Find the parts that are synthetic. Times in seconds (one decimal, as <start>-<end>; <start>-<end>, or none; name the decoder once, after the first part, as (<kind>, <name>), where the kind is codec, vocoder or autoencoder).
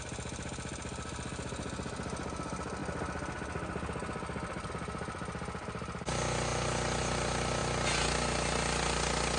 none